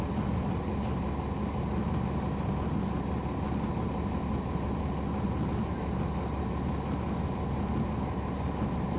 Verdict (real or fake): real